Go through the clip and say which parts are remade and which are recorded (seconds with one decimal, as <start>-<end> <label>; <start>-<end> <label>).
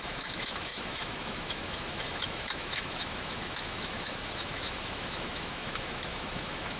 0.0-6.8 remade